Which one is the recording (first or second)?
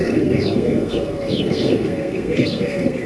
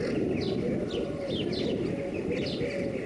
second